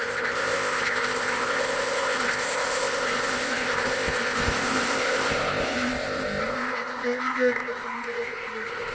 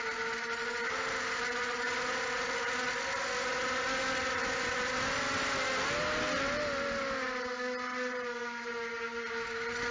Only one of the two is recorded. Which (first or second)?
second